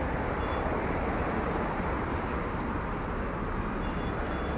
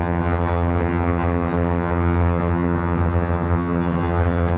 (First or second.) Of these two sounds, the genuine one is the first